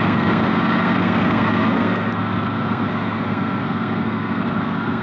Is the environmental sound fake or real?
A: fake